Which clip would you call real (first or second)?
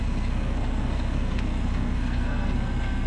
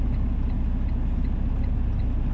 second